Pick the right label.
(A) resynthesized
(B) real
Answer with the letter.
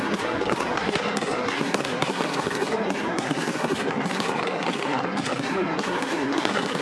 A